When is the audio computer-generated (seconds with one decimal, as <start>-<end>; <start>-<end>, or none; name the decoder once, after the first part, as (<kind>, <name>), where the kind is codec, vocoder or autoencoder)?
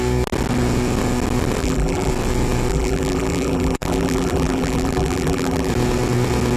1.6-2.1 (vocoder, BigVGAN v2); 2.7-5.7